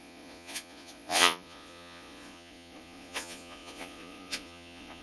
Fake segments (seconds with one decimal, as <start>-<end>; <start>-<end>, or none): 0.0-5.0

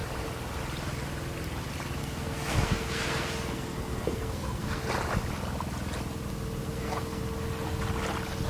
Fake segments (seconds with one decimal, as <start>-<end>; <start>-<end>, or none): 2.0-4.8; 6.6-7.2

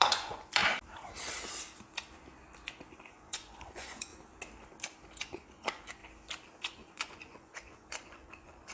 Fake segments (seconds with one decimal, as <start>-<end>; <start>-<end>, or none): 0.0-0.6; 3.1-4.1; 5.2-6.0; 6.6-8.7

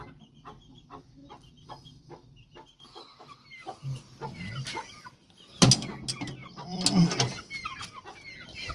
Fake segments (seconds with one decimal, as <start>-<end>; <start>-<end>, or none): none

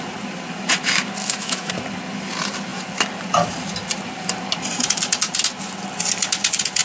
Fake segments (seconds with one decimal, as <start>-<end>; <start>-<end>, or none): 1.2-1.7

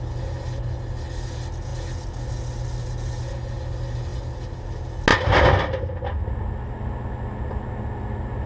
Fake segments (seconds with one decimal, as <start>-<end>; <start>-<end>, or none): none

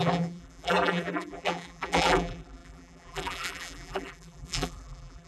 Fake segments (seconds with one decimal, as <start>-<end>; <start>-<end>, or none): 0.0-5.3